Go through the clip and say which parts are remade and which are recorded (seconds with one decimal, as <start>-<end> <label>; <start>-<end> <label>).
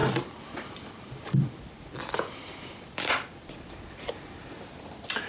0.0-5.3 remade